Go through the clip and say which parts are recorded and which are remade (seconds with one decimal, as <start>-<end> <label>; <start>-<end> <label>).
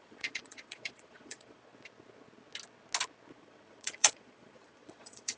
0.0-1.7 remade; 1.7-3.3 recorded; 3.3-5.4 remade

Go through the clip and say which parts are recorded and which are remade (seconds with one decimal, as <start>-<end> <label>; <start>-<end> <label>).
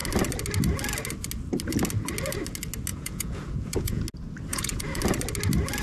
0.0-2.9 recorded; 2.9-4.0 remade; 4.0-4.5 recorded; 4.5-5.0 remade; 5.0-5.8 recorded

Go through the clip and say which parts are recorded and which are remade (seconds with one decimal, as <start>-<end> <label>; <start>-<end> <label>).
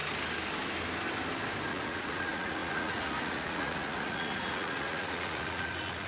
0.0-1.7 recorded; 1.7-6.1 remade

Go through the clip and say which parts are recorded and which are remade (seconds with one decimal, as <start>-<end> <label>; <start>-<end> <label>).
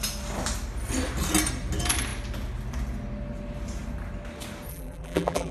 0.0-4.7 recorded; 4.7-5.5 remade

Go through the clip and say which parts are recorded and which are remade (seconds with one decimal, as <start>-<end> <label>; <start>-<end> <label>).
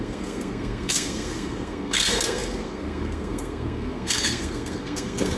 0.0-5.4 remade